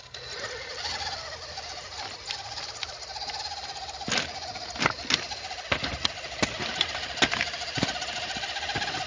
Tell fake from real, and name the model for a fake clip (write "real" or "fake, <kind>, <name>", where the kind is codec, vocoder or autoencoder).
real